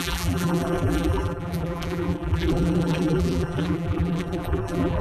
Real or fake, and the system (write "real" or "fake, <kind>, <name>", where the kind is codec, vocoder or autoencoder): fake, vocoder, BigVGAN v2